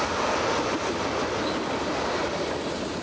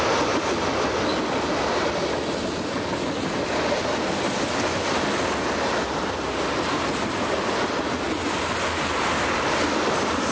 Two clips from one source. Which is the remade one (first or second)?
first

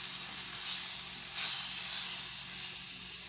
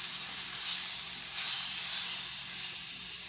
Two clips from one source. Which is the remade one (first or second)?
second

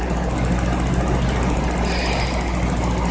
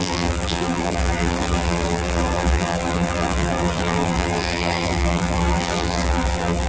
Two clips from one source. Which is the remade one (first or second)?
second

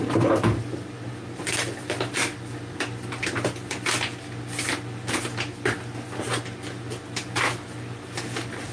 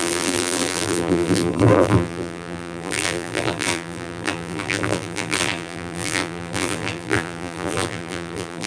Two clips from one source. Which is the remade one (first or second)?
second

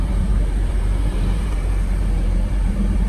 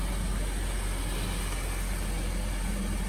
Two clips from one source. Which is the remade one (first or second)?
first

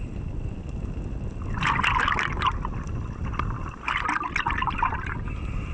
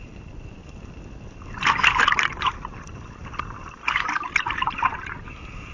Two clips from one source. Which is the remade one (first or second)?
second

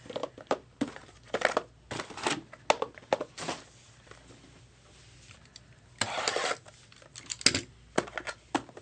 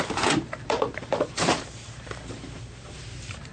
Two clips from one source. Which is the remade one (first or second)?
second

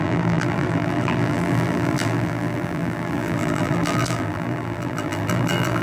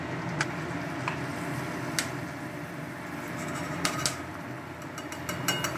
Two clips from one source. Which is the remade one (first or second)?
first